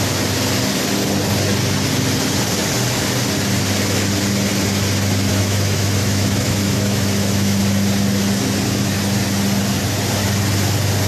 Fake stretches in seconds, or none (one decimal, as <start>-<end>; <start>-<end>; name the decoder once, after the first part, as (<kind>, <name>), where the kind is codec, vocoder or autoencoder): 5.3-7.6 (autoencoder, DAC-VAE)